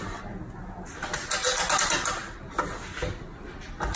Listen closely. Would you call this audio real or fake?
real